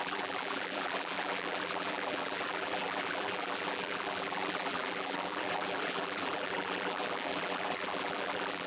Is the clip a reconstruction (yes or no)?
yes